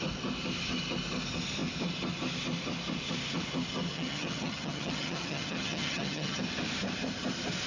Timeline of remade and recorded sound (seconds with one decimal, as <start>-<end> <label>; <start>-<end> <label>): 0.0-3.9 recorded; 3.9-6.4 remade; 6.4-7.7 recorded